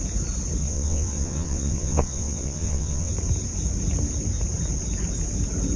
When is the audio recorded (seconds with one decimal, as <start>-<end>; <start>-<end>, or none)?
0.0-0.6; 3.1-5.8